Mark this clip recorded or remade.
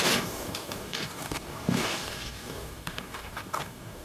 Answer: remade